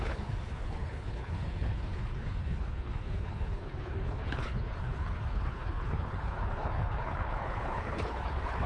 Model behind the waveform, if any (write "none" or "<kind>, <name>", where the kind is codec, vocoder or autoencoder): codec, HILCodec